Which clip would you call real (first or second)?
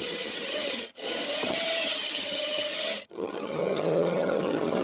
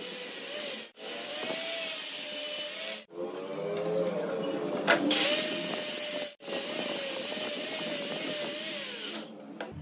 second